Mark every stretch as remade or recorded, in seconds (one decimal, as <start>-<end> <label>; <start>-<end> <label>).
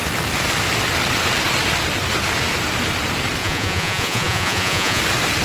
0.0-3.4 recorded; 3.4-5.0 remade; 5.0-5.4 recorded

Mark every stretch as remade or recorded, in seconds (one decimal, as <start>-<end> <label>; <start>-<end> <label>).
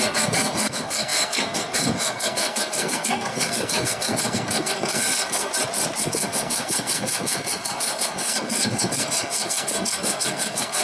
0.0-5.5 remade; 5.5-6.0 recorded; 6.0-10.8 remade